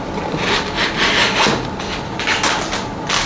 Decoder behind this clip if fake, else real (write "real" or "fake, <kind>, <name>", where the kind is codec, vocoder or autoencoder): real